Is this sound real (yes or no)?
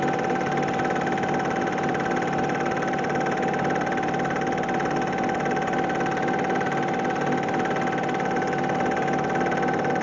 yes